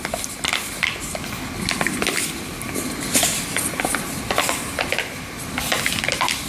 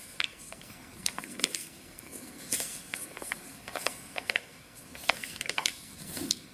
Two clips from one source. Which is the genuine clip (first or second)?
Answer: first